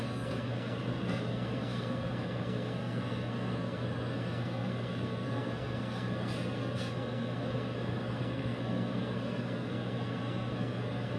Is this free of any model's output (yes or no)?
no